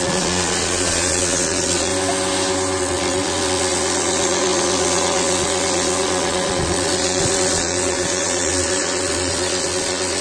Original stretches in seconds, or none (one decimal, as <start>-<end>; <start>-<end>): 1.9-2.8